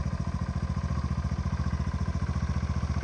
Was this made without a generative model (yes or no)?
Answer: yes